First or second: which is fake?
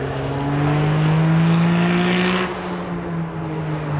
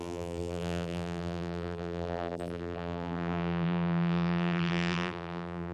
second